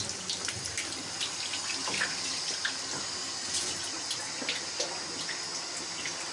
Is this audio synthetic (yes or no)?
no